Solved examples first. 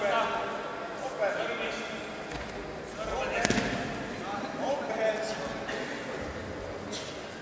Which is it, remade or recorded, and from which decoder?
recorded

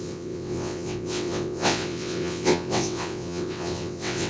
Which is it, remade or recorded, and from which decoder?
remade, vocoder, WaveNeXt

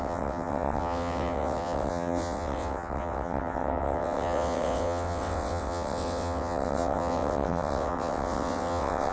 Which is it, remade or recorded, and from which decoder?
remade, vocoder, WaveNeXt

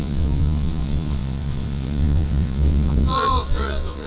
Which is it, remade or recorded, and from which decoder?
remade, vocoder, WaveNeXt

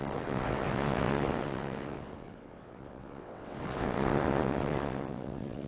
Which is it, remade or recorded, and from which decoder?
remade, vocoder, WaveNeXt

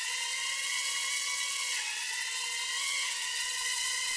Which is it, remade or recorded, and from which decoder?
remade, vocoder, WaveNeXt